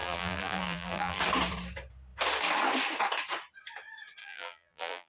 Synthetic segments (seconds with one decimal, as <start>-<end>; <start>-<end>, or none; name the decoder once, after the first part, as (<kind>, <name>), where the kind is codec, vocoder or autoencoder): 0.0-1.2 (vocoder, BigVGAN v2); 4.2-5.1